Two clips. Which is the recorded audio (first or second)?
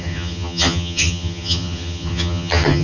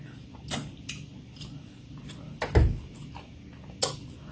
second